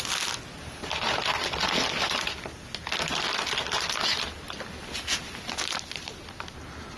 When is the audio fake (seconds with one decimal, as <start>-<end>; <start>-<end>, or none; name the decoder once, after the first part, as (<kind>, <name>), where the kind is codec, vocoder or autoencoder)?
none